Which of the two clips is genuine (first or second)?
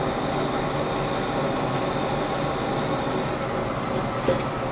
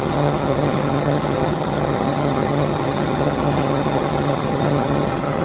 first